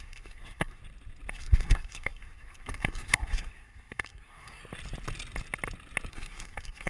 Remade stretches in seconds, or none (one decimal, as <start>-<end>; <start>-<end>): 0.0-0.8; 1.3-4.6; 6.1-6.9